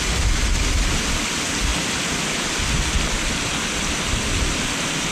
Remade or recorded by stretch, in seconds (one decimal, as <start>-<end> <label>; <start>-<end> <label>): 0.0-5.1 recorded